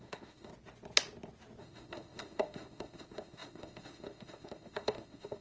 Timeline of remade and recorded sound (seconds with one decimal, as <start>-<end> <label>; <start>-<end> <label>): 0.0-0.5 remade; 0.5-1.6 recorded; 1.6-5.4 remade